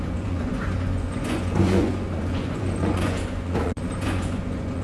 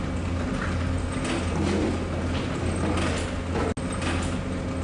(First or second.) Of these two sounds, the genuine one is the second